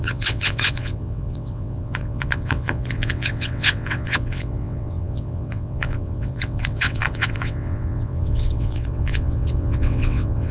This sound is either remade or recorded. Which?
remade